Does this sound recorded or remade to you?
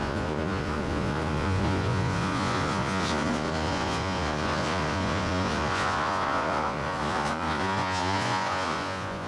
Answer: remade